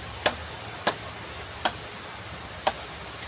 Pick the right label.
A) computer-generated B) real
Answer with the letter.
B